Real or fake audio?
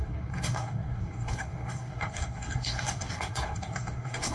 fake